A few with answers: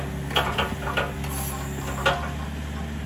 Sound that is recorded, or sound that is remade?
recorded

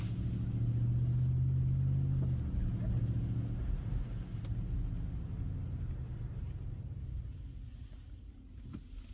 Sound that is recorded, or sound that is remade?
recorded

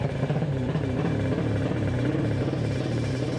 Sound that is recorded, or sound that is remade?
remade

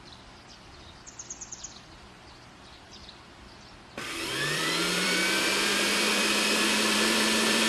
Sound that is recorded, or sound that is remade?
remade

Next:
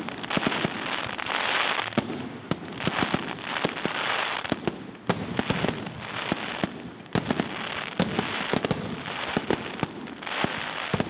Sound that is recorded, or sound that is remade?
recorded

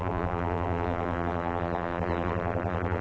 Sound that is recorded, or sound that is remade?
remade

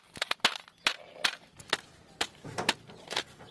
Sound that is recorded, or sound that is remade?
recorded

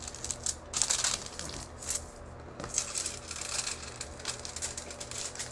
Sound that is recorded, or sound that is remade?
recorded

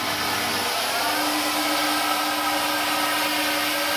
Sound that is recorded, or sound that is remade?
recorded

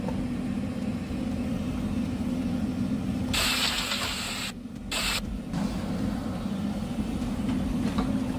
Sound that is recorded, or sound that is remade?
recorded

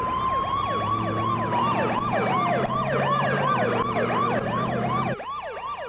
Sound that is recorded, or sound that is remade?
remade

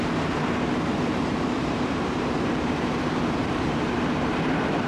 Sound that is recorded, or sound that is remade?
remade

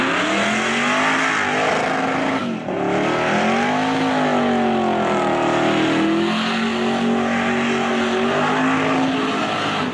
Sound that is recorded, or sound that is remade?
recorded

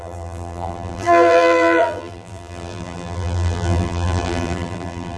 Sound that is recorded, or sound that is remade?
remade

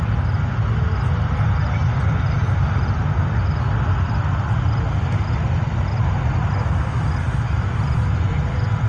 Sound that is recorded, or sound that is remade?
recorded